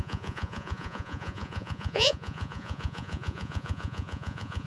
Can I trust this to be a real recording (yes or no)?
no